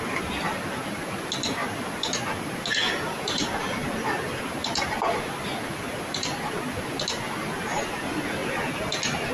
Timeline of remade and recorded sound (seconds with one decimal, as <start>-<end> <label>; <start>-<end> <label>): 0.0-9.3 recorded